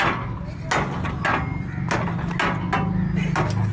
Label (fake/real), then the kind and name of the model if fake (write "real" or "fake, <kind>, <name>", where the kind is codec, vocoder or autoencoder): real